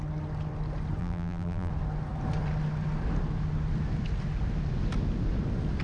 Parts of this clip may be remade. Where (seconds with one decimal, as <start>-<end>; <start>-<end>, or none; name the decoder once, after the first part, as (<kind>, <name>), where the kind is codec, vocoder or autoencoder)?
1.0-1.7 (vocoder, BigVGAN v2)